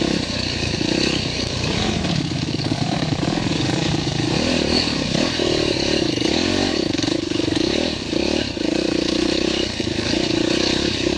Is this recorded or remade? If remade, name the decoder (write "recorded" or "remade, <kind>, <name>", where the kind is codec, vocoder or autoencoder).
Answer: remade, codec, DAC